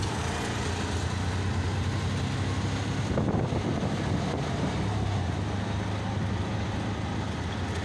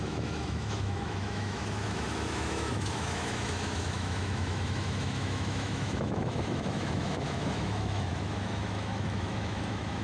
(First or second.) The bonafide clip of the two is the first